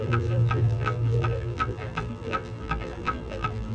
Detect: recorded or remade remade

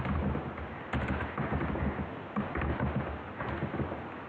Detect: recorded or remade recorded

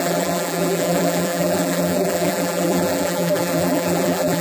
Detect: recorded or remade remade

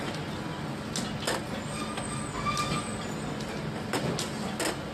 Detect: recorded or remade recorded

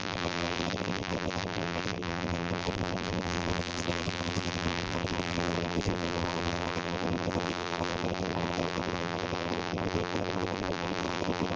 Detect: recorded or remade remade